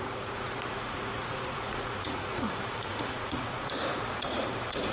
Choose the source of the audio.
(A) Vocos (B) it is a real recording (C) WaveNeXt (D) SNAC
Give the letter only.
A